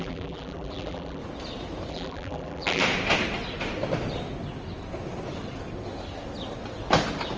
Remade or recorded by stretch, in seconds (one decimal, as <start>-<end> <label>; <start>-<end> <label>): 0.0-1.2 remade; 1.2-1.9 recorded; 1.9-2.8 remade; 2.8-7.4 recorded